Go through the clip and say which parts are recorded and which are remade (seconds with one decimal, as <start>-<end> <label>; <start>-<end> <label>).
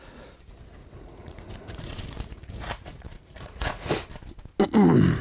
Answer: 0.0-0.8 recorded; 0.8-3.9 remade; 3.9-5.2 recorded